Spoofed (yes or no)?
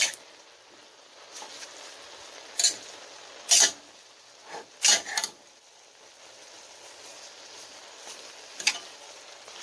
no